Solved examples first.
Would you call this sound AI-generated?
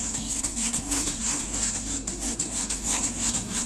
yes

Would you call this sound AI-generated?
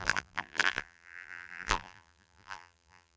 yes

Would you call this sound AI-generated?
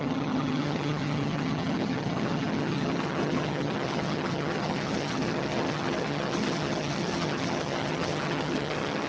yes